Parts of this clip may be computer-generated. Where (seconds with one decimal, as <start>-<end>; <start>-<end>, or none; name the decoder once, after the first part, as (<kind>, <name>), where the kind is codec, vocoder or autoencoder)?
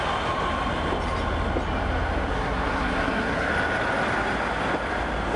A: 2.3-3.5 (codec, SNAC)